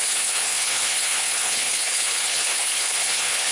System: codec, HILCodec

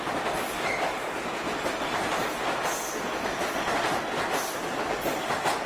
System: none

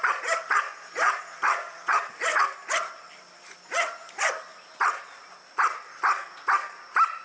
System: none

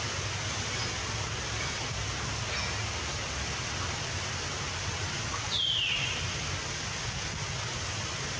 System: none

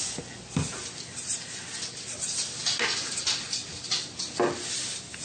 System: none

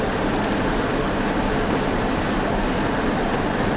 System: none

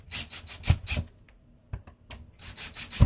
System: none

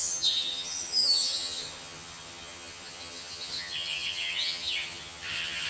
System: vocoder, HiFi-GAN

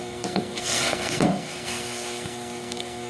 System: codec, SNAC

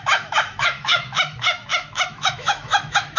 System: autoencoder, DAC-VAE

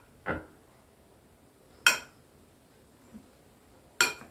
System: none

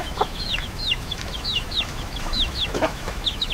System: autoencoder, DAC-VAE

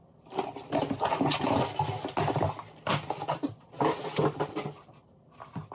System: none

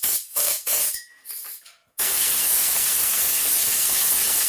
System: codec, SNAC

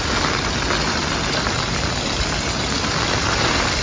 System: none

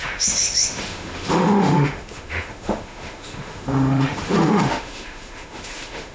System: autoencoder, DAC-VAE